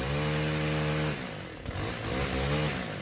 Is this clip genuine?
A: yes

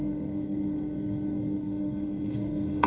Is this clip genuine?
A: no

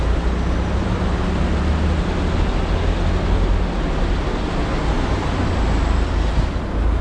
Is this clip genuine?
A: yes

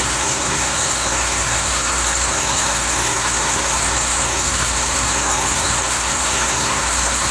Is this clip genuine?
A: no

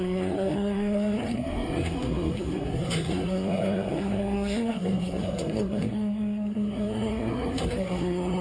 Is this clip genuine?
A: no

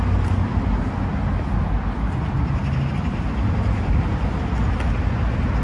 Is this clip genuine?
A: yes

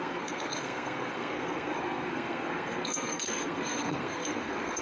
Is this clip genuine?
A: no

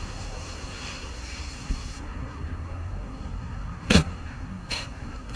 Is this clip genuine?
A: no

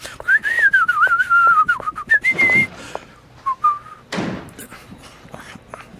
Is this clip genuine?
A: yes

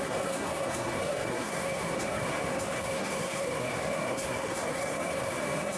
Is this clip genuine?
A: no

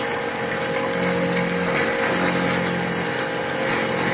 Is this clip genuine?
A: yes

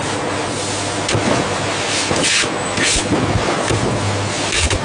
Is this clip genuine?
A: yes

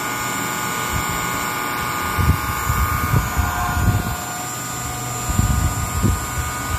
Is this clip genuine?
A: yes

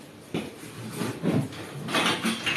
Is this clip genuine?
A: yes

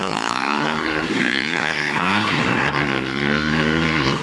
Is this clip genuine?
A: no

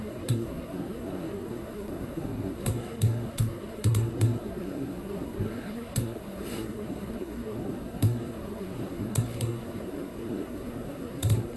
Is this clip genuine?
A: no